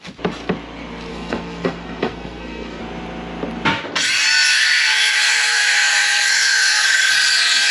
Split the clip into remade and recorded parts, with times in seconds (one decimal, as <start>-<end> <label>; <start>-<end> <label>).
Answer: 0.0-1.1 recorded; 1.1-2.8 remade; 2.8-4.5 recorded; 4.5-7.1 remade; 7.1-7.7 recorded